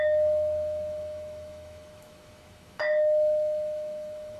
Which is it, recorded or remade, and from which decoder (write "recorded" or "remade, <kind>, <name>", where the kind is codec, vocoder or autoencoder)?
remade, autoencoder, DAC-VAE